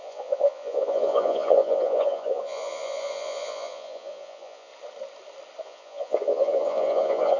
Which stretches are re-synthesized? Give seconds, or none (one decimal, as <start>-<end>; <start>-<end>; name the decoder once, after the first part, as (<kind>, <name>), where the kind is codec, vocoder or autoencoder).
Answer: 0.0-4.7 (vocoder, Vocos); 5.6-7.4